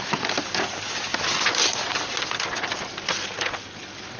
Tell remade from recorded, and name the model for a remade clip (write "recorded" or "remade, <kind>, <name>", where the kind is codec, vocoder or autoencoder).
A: recorded